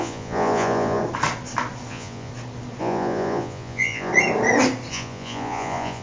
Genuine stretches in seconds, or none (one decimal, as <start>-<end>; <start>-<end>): 1.0-1.9; 2.3-2.8; 4.1-4.9